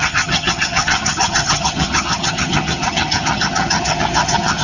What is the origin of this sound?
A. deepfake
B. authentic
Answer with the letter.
A